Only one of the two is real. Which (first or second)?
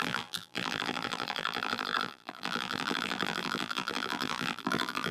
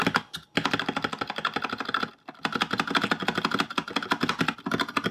second